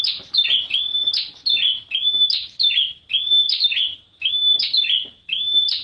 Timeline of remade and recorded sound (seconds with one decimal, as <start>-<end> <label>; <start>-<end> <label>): 0.0-5.8 recorded